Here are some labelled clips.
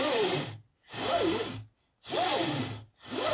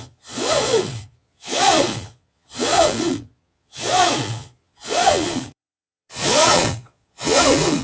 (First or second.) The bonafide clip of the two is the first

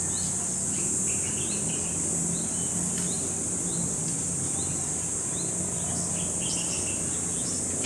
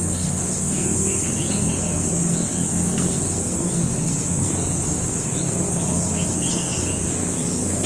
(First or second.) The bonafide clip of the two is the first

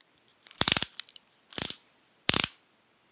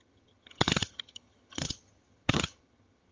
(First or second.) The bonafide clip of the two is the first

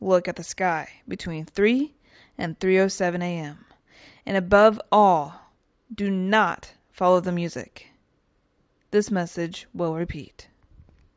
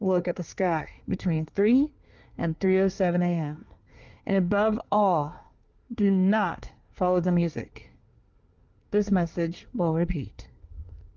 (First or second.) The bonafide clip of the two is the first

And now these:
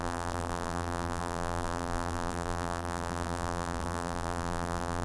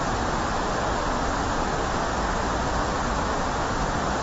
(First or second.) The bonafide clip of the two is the second